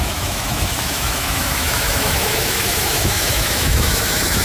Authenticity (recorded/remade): remade